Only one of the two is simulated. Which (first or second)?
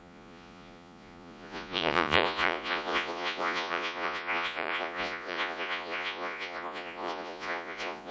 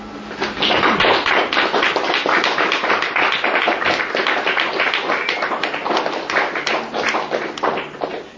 first